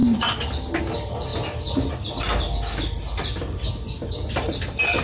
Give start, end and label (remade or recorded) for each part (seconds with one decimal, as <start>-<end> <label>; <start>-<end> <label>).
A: 0.0-0.8 recorded; 0.8-1.3 remade; 1.3-4.3 recorded; 4.3-5.0 remade